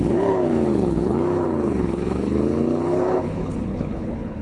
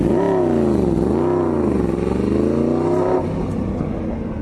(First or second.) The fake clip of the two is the first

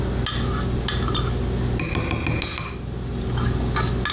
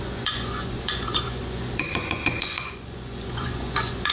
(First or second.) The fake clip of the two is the second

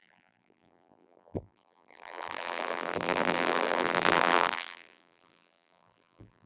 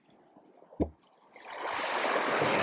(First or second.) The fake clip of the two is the first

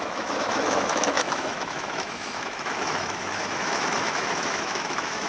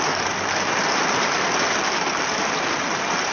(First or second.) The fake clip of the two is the first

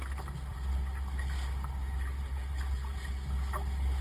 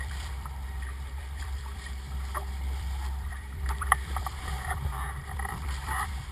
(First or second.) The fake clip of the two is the second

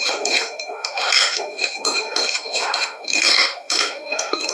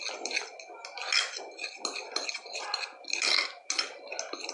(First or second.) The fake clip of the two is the first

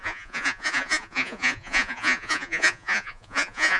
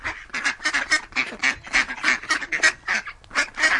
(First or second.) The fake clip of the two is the first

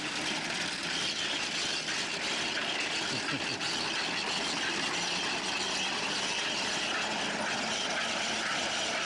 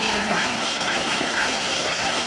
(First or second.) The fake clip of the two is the second